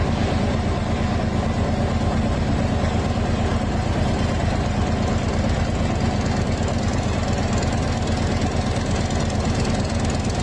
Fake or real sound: real